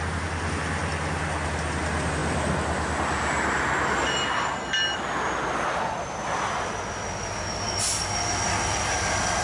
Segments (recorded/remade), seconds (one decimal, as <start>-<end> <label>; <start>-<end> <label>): 0.0-9.4 recorded